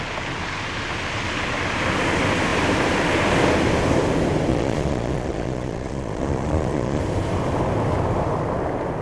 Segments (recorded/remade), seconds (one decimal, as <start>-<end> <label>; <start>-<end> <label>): 0.0-4.5 recorded; 4.5-7.0 remade; 7.0-9.0 recorded